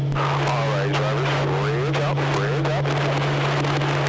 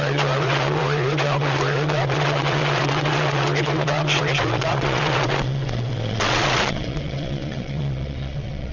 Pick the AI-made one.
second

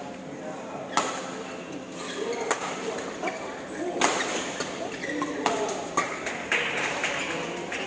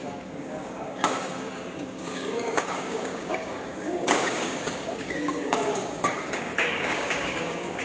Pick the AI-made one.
second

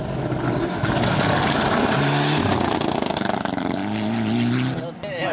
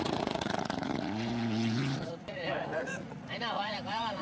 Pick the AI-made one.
second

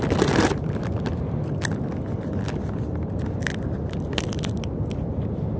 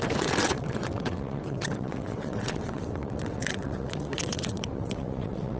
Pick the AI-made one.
second